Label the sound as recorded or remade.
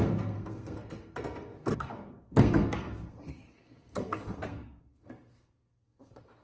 remade